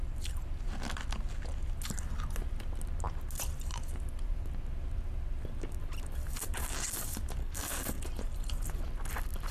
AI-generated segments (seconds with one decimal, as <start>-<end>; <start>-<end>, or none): 7.4-8.0